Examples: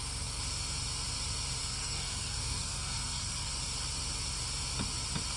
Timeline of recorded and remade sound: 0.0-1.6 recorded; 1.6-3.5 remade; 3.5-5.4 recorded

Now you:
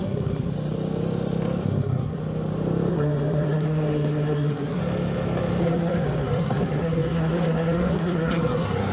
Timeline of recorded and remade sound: 0.0-0.5 remade; 0.5-1.7 recorded; 1.7-2.2 remade; 2.2-2.9 recorded; 2.9-4.8 remade; 4.8-5.6 recorded; 5.6-8.9 remade

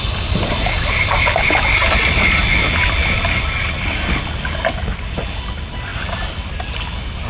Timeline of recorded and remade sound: 0.0-7.3 recorded

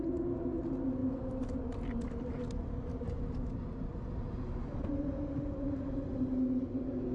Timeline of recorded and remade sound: 0.0-7.1 recorded

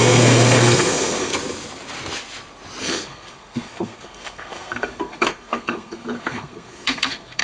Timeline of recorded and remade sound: 0.0-1.3 remade; 1.3-2.8 recorded; 2.8-7.4 remade

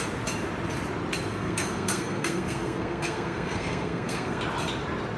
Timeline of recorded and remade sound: 0.0-1.3 recorded; 1.3-4.4 remade; 4.4-5.2 recorded